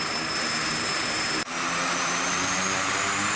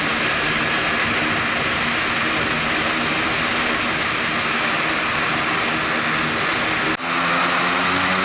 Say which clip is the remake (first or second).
first